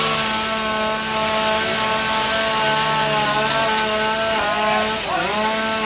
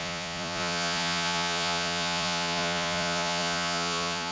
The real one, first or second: first